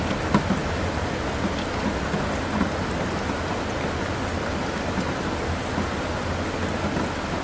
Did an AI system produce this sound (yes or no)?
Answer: no